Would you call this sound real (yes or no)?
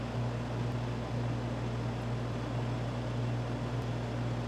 yes